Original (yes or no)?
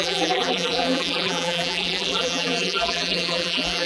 no